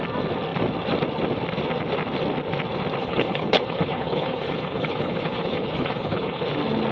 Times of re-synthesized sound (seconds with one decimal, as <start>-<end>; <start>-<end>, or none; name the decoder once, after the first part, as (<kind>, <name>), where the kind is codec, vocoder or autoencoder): 3.0-6.4 (codec, HILCodec)